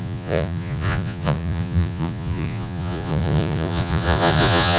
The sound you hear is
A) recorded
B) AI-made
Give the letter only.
B